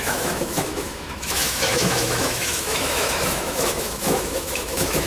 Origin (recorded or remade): remade